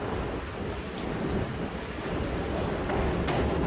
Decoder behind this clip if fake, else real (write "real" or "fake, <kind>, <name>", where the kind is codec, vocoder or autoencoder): real